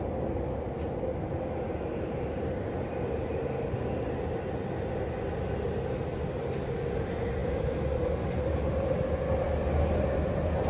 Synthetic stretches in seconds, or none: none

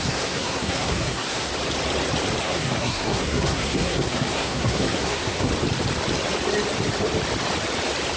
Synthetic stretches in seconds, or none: 0.0-1.5 (codec, SNAC); 2.4-5.5